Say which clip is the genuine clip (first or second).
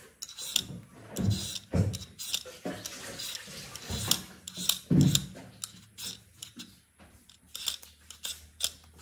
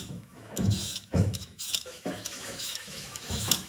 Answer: first